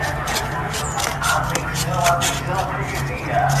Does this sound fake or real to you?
real